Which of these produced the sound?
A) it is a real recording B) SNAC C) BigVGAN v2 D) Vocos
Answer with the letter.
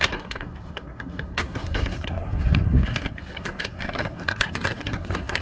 B